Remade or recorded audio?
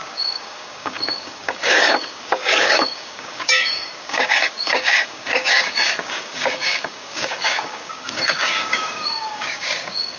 remade